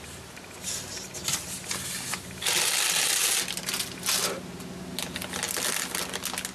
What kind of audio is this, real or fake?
real